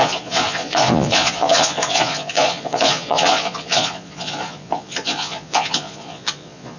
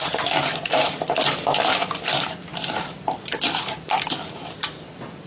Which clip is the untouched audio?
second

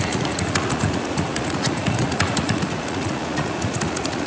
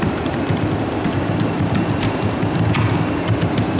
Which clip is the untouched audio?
second